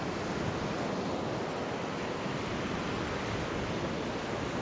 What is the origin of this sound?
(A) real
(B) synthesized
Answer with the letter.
A